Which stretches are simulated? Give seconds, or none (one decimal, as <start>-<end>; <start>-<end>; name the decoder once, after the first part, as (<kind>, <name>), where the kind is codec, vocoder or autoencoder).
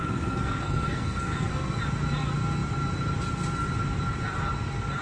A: 0.0-1.8 (codec, SNAC)